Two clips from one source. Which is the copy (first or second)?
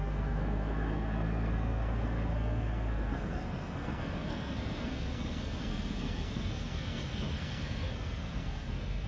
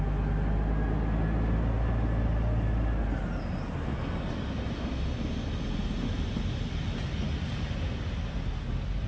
first